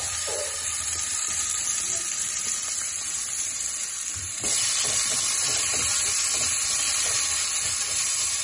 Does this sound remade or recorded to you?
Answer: remade